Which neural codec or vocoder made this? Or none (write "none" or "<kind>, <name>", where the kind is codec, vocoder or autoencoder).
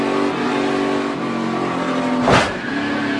none